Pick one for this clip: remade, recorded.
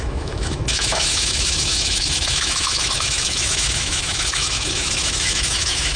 remade